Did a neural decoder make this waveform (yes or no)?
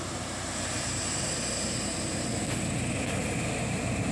no